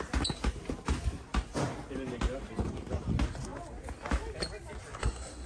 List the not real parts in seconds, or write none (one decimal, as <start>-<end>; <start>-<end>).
5.0-5.5